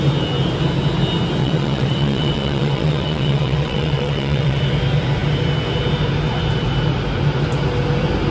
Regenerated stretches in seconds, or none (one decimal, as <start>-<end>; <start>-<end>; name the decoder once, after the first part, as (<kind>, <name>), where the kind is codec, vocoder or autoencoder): 1.4-4.6 (vocoder, WaveNeXt)